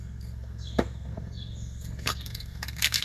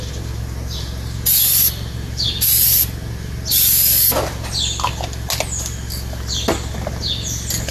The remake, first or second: first